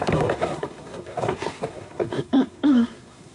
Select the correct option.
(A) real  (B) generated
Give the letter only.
B